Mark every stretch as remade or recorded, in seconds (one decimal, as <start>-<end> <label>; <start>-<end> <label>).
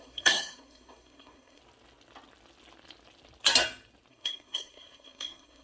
0.0-1.6 remade; 1.6-4.1 recorded; 4.1-5.6 remade